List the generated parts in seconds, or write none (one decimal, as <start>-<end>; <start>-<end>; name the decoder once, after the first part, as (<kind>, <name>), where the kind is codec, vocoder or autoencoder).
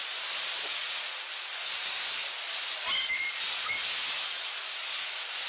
0.9-1.3 (vocoder, Vocos); 4.2-4.8